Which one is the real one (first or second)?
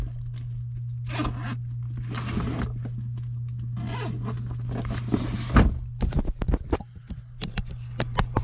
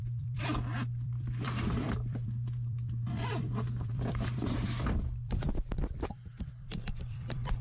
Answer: first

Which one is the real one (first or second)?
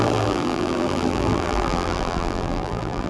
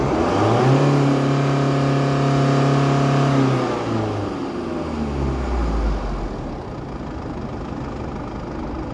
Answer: second